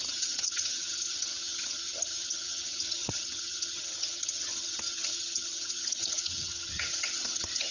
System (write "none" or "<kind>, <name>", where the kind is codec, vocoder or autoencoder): vocoder, HiFi-GAN